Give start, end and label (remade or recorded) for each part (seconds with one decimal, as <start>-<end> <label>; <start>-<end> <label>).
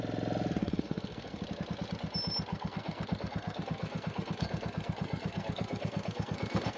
0.0-0.6 recorded; 0.6-1.4 remade; 1.4-2.5 recorded; 2.5-6.8 remade